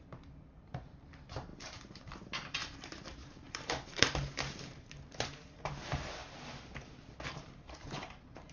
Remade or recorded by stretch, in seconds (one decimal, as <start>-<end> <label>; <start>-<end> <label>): 0.0-6.2 remade; 6.2-7.3 recorded; 7.3-8.5 remade